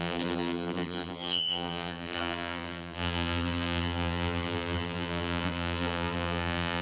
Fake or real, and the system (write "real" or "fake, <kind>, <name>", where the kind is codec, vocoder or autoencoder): fake, vocoder, BigVGAN v2